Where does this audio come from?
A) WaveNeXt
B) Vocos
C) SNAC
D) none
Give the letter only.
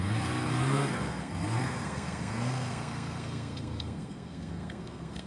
C